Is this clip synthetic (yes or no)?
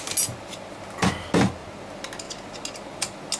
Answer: no